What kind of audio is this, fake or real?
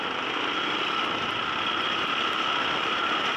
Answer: real